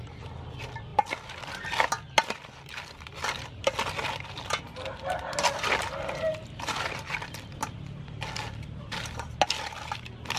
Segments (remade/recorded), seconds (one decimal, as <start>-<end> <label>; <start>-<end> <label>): 0.0-10.4 recorded